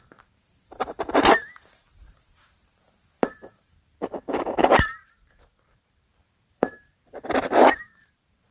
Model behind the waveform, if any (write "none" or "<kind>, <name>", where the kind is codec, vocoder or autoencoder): vocoder, BigVGAN v2